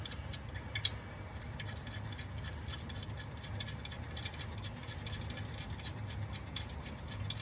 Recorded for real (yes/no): yes